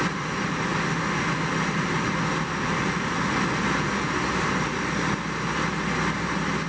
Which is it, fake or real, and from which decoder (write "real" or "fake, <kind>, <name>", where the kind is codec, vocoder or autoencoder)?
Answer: real